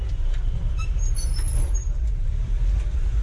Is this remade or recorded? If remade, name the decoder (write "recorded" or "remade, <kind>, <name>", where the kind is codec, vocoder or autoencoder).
remade, vocoder, BigVGAN v2